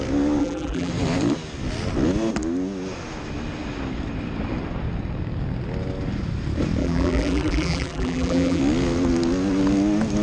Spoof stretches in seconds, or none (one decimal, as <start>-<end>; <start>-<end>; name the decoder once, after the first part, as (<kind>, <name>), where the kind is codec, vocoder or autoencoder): 0.4-0.9 (vocoder, BigVGAN v2); 6.8-8.6